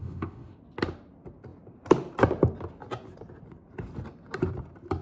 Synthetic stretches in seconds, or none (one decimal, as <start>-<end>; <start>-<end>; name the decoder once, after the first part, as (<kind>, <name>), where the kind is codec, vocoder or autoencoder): 0.0-0.6 (autoencoder, DAC-VAE)

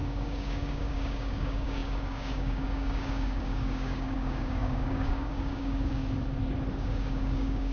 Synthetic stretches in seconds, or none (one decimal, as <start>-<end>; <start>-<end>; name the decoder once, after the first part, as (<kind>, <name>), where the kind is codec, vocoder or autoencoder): 0.0-6.0 (codec, DAC); 6.8-7.7

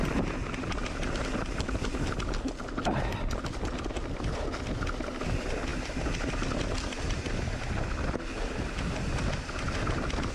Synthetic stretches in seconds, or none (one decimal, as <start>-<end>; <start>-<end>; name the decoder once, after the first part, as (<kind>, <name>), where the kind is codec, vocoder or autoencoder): none

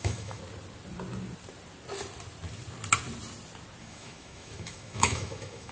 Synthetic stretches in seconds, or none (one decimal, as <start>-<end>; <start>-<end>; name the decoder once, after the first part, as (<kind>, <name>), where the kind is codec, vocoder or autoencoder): 0.0-0.4 (autoencoder, DAC-VAE); 3.8-5.7

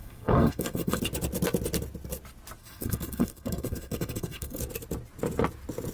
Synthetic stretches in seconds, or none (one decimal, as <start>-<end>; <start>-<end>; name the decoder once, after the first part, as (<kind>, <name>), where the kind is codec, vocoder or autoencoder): 0.0-1.0 (codec, SNAC); 2.6-4.6